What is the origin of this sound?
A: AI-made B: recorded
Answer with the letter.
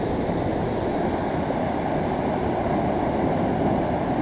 B